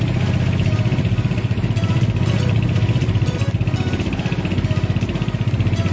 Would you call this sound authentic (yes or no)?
yes